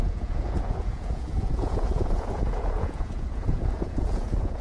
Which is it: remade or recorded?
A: remade